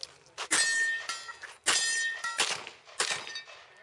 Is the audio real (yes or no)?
yes